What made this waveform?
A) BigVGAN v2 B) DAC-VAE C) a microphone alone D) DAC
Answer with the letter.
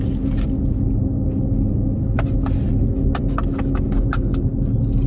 C